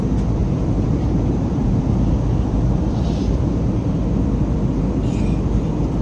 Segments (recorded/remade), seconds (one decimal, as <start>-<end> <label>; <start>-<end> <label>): 0.0-0.4 recorded; 0.4-4.0 remade; 4.0-6.0 recorded

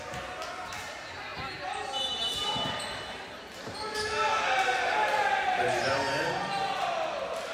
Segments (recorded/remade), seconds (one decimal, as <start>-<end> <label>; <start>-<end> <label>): 0.0-7.5 recorded